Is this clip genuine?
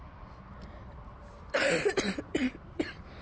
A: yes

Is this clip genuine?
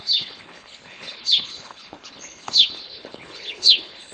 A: no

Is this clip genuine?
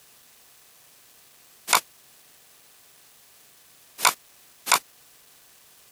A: yes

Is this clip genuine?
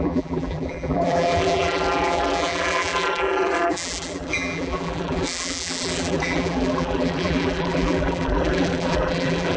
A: no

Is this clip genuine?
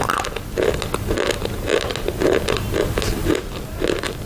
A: yes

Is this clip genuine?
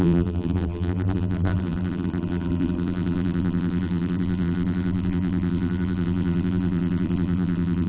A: no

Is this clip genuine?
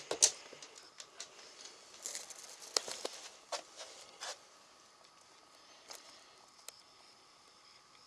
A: yes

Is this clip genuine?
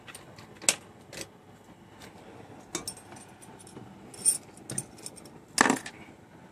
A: yes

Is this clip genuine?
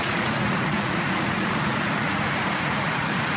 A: no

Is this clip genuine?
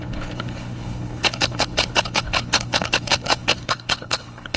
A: no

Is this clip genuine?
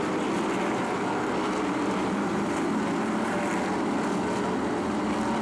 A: yes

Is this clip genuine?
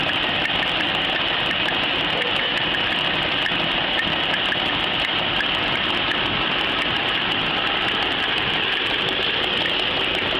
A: yes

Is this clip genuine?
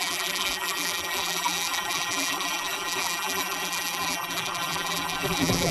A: no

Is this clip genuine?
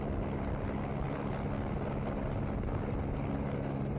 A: yes